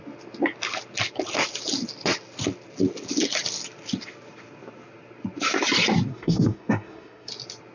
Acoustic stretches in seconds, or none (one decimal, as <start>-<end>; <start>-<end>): 0.0-6.1; 7.3-7.7